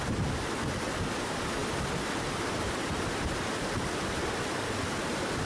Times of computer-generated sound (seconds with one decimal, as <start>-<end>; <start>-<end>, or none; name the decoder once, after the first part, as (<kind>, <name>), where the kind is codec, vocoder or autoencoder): none